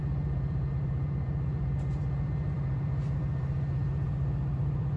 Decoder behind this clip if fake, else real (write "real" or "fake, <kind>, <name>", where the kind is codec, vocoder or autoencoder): fake, vocoder, BigVGAN v2